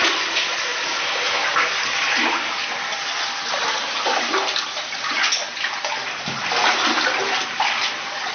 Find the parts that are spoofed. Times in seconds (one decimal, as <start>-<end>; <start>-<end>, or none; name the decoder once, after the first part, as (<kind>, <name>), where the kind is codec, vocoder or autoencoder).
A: none